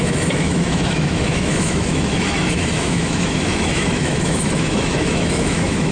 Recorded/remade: remade